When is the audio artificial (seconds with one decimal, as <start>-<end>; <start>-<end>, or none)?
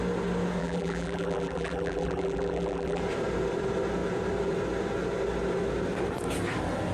0.6-3.0